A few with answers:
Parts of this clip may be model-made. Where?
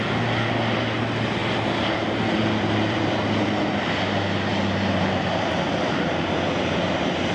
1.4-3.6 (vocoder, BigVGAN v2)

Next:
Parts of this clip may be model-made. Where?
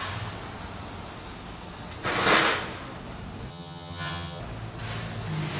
3.5-4.4 (vocoder, HiFi-GAN)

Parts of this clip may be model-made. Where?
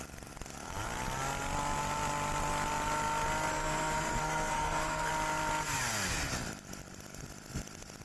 3.5-5.1 (codec, SNAC)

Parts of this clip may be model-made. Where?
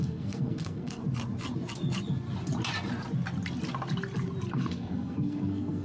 0.0-1.0 (codec, SNAC); 4.5-5.8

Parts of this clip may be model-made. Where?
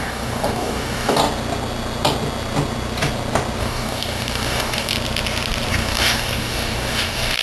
0.0-1.2 (codec, DAC); 3.6-4.9; 5.7-7.4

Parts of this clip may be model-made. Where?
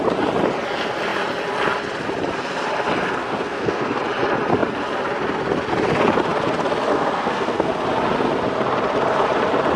3.2-4.0 (codec, SNAC); 6.9-7.7